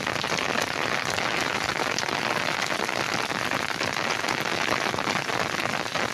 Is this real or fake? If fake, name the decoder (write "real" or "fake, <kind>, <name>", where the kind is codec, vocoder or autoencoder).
real